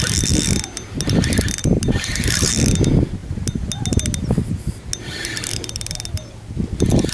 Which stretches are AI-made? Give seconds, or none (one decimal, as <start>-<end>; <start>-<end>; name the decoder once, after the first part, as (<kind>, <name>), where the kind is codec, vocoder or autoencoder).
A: 1.6-2.5 (vocoder, BigVGAN v2)